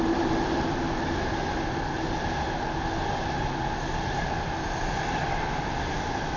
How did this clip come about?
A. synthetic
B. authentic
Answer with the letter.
B